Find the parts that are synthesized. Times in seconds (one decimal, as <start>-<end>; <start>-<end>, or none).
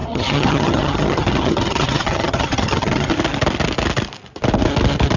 0.0-3.1